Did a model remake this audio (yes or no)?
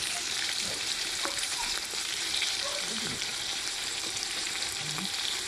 yes